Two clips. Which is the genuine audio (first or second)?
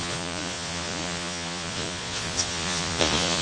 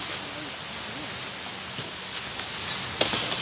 second